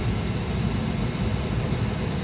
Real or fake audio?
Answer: real